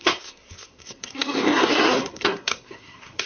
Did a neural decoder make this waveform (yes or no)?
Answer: yes